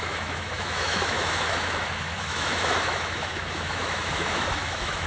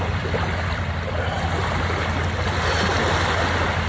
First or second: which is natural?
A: second